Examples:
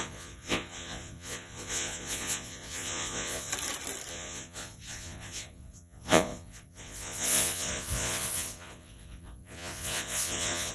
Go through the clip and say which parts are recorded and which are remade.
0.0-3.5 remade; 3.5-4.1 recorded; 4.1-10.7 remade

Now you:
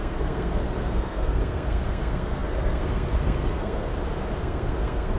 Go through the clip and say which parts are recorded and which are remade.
0.0-3.9 remade; 3.9-4.4 recorded; 4.4-5.2 remade

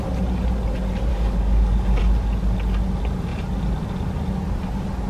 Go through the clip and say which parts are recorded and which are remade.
0.0-1.1 recorded; 1.1-2.0 remade; 2.0-5.1 recorded

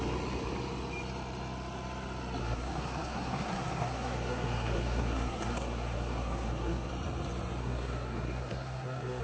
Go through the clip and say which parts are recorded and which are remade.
0.0-2.4 recorded; 2.4-6.9 remade; 6.9-7.6 recorded; 7.6-9.2 remade